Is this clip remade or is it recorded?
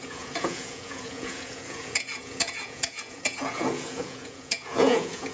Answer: remade